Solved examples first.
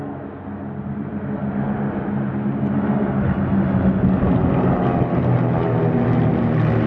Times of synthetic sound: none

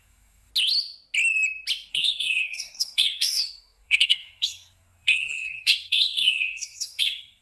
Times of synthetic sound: 0.0-0.5 (codec, SNAC); 1.9-7.4

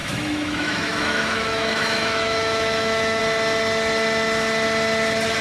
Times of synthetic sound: 0.0-3.2 (autoencoder, DAC-VAE)

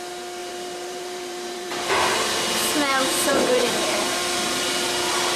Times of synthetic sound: 0.4-1.9 (vocoder, BigVGAN v2); 2.9-4.7

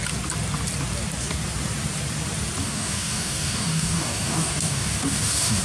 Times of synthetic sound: 2.6-5.6 (codec, DAC)